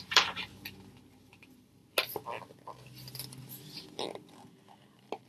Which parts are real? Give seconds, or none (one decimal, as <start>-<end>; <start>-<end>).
0.5-1.1; 1.8-5.3